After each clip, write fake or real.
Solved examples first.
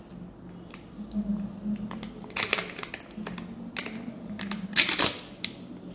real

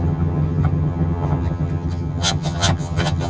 fake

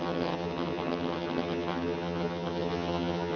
fake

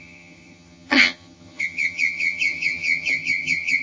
fake